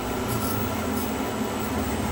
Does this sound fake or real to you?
real